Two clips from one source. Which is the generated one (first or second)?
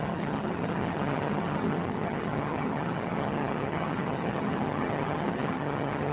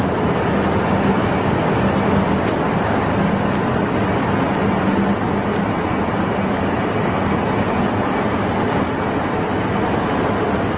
first